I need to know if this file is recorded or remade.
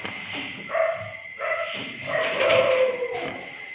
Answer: recorded